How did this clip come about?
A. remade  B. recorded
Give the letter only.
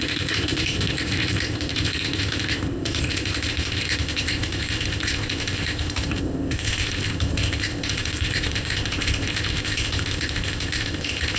A